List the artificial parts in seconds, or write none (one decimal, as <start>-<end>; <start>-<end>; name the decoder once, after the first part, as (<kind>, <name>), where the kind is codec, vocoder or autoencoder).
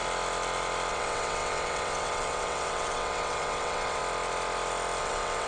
0.9-4.0 (vocoder, WaveNeXt); 5.0-5.5